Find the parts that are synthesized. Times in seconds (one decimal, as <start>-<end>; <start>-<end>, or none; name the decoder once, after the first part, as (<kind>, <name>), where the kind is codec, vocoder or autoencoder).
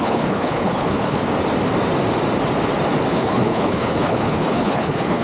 0.0-1.2 (codec, HILCodec); 3.1-5.2